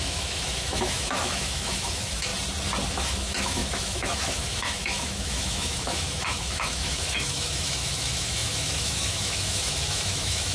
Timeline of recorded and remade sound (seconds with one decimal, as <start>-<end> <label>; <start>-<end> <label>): 0.0-2.3 remade; 2.3-2.9 recorded; 2.9-10.5 remade